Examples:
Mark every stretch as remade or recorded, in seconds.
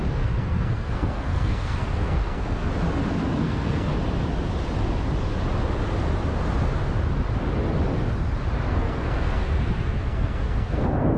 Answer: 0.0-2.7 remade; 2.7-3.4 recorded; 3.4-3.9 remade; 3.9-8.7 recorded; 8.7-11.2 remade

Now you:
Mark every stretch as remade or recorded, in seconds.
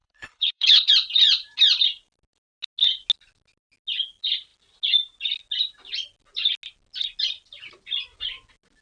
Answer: 0.0-0.9 remade; 0.9-8.8 recorded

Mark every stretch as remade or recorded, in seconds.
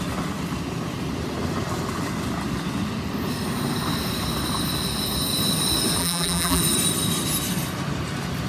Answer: 0.0-6.0 recorded; 6.0-6.6 remade; 6.6-8.5 recorded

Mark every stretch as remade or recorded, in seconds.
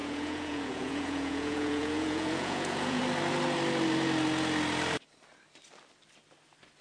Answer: 0.0-3.0 remade; 3.0-6.8 recorded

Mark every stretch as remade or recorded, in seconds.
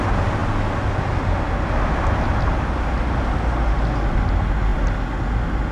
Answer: 0.0-5.7 recorded